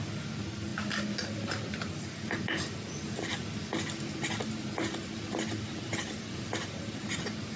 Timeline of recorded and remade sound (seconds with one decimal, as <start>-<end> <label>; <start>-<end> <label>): 0.0-7.6 recorded